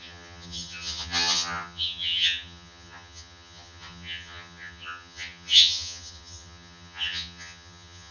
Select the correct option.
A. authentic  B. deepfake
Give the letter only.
B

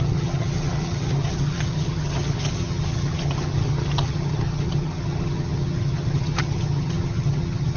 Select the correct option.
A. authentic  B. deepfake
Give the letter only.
B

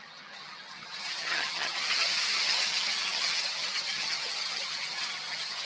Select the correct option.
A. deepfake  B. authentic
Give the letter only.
A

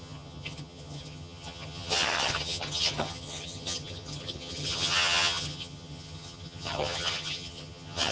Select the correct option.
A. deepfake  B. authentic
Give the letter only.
A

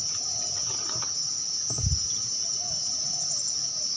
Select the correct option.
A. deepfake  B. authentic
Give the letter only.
B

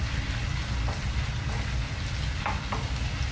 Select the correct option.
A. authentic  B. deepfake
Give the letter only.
A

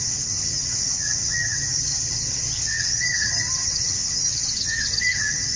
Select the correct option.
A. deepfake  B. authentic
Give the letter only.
A